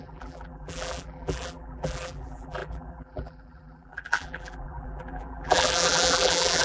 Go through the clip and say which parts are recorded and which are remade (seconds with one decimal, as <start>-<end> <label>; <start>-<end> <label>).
0.0-6.6 remade